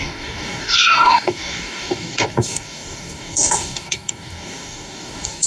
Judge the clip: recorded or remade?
remade